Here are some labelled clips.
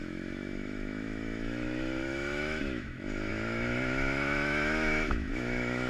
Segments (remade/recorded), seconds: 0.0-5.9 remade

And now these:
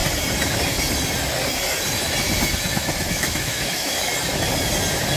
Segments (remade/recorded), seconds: 0.0-3.1 recorded; 3.1-4.1 remade; 4.1-5.2 recorded

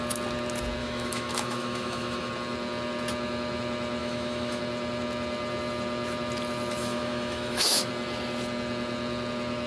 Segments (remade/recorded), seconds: 0.0-0.8 recorded; 0.8-2.3 remade; 2.3-4.0 recorded; 4.0-4.6 remade; 4.6-6.8 recorded; 6.8-7.9 remade; 7.9-9.7 recorded

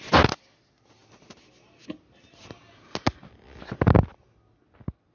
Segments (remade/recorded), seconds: 0.0-5.1 recorded